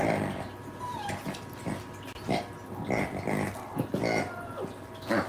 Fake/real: real